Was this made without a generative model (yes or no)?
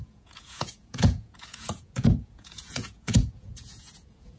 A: no